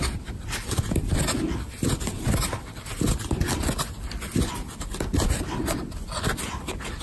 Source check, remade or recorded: recorded